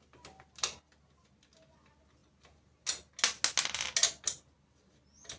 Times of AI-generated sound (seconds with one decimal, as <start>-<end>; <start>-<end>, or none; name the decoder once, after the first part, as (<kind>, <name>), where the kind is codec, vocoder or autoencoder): none